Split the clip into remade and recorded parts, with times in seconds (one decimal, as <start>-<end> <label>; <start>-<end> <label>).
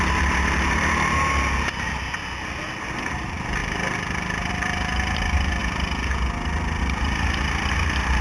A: 0.0-8.2 recorded